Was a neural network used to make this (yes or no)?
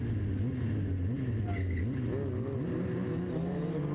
no